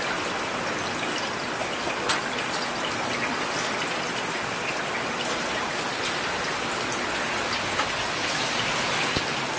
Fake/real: real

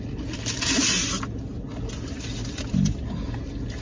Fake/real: real